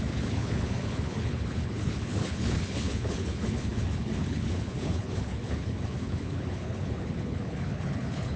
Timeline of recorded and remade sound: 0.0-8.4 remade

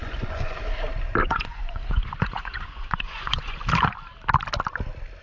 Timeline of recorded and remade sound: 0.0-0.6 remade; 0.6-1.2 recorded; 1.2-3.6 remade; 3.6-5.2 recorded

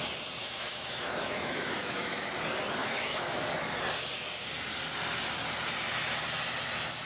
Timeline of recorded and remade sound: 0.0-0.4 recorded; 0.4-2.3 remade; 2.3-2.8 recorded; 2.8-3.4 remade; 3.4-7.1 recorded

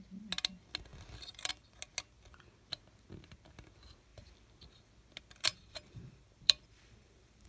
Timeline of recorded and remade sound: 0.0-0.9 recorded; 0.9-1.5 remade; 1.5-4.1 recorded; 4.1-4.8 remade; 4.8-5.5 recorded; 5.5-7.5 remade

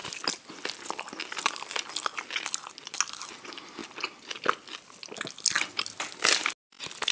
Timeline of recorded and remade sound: 0.0-7.1 recorded

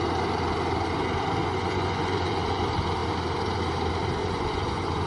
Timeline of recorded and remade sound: 0.0-1.4 recorded; 1.4-2.6 remade; 2.6-4.2 recorded; 4.2-5.1 remade